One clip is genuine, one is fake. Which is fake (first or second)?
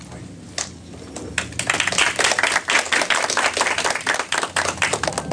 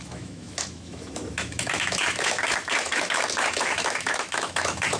second